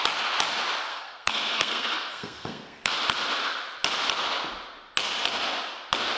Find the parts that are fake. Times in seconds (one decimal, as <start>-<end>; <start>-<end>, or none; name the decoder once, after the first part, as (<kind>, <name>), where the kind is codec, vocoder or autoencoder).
0.9-2.9 (codec, SNAC)